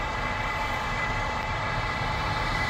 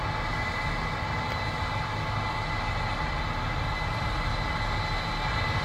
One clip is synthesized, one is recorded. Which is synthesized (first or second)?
first